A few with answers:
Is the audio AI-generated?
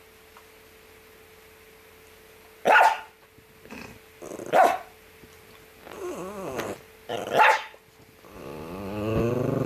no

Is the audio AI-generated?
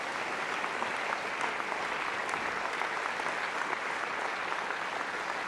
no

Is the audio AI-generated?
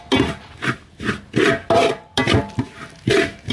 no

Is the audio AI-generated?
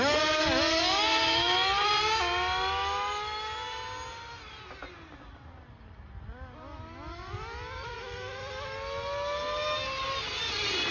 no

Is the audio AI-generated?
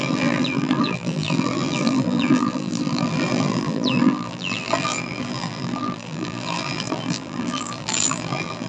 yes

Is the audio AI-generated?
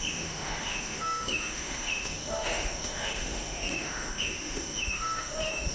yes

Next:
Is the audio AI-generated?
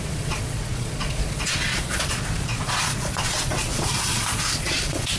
yes